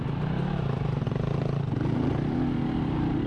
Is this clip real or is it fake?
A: real